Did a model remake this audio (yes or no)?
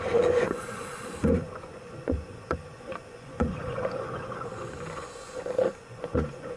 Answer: yes